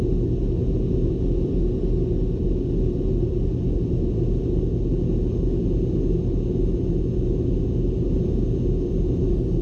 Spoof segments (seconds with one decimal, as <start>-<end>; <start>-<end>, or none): none